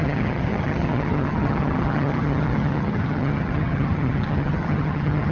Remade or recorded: remade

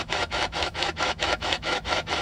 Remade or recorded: remade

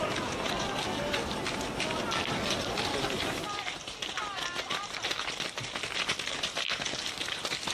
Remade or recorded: recorded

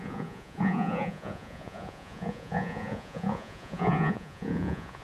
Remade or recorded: remade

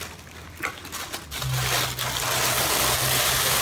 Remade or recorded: recorded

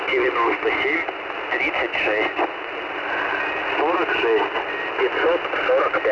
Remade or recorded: recorded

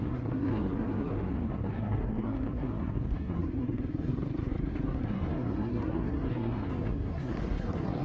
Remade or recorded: remade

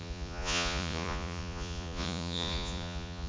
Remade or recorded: remade